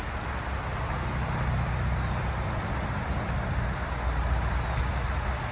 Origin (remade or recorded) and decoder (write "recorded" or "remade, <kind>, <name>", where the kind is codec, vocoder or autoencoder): recorded